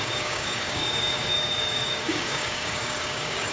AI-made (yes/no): yes